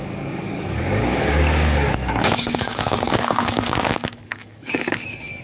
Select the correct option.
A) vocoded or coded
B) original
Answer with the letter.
A